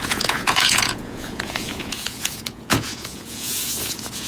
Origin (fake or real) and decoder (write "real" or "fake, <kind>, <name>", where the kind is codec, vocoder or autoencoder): fake, vocoder, Vocos